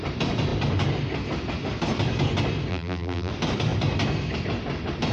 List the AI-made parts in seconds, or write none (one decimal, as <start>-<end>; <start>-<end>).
2.7-3.3